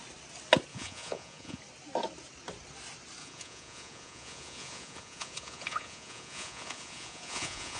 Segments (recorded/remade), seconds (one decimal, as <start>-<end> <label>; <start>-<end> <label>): 0.0-0.7 recorded; 0.7-1.6 remade; 1.6-3.2 recorded; 3.2-7.8 remade